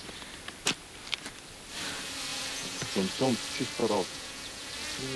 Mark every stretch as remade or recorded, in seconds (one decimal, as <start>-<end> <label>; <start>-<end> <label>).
0.0-2.3 recorded; 2.3-3.3 remade; 3.3-3.8 recorded; 3.8-4.7 remade; 4.7-5.2 recorded